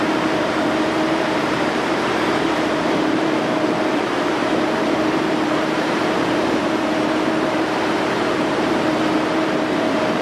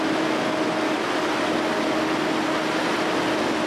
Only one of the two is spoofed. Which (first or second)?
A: first